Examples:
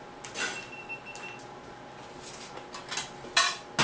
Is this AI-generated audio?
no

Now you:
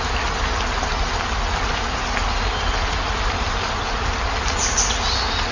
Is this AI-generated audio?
no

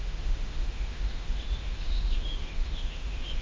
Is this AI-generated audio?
yes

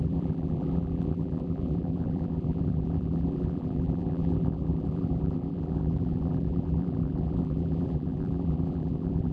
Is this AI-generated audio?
yes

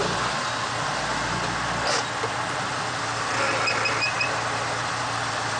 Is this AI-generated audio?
no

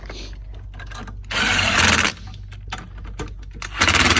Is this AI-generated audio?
no